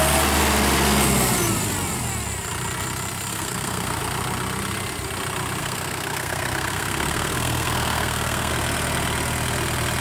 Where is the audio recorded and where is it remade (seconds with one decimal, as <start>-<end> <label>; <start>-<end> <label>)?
0.0-3.3 recorded; 3.3-4.0 remade; 4.0-5.6 recorded; 5.6-8.5 remade; 8.5-10.0 recorded